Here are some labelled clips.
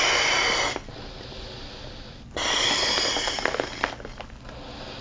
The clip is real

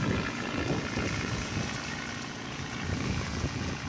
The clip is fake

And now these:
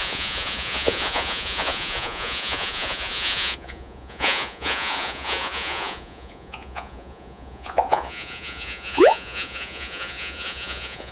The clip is fake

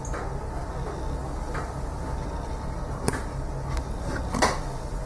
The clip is real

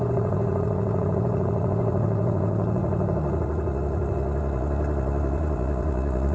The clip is fake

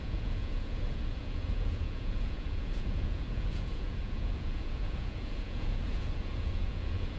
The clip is fake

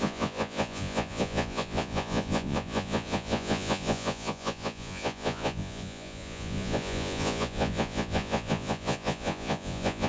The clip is fake